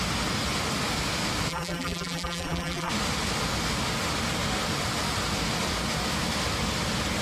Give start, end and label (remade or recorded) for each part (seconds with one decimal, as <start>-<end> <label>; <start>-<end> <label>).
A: 0.0-1.5 recorded; 1.5-2.9 remade; 2.9-7.2 recorded